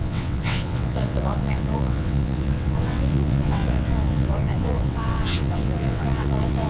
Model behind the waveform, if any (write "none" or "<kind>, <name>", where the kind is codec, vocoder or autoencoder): vocoder, WaveNeXt